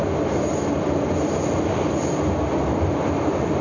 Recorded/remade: recorded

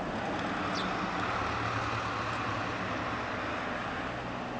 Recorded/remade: recorded